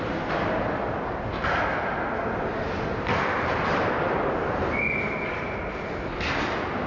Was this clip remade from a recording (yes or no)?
no